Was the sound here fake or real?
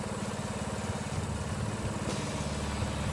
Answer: real